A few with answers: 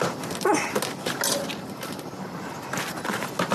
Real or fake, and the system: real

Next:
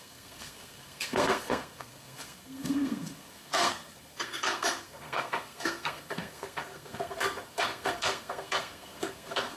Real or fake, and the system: fake, codec, SNAC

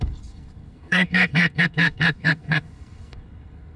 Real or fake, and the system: fake, codec, SNAC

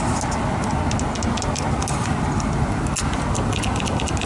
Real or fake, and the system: real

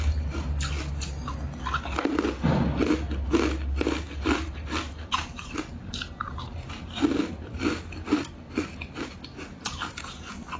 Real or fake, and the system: real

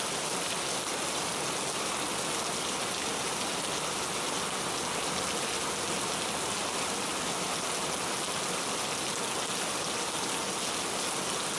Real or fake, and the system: real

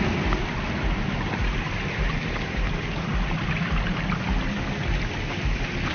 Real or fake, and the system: real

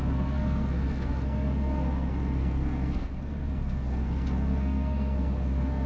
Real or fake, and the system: fake, codec, SNAC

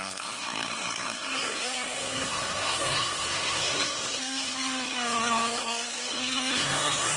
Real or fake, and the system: fake, codec, SNAC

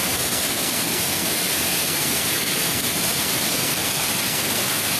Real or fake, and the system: fake, codec, SNAC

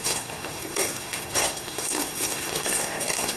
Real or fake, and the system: fake, codec, SNAC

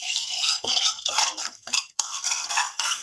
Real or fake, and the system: fake, codec, SNAC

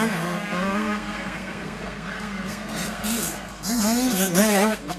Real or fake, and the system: fake, codec, SNAC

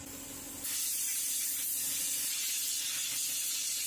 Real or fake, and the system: real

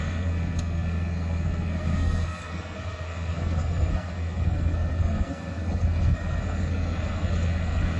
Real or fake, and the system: fake, codec, SNAC